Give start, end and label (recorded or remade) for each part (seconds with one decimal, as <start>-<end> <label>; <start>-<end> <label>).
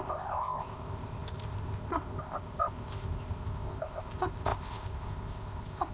0.0-5.9 remade